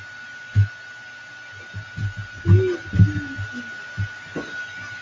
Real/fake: real